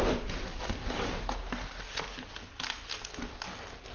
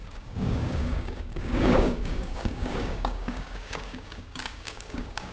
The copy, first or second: second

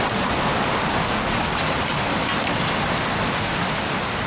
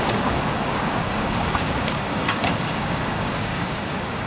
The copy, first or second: second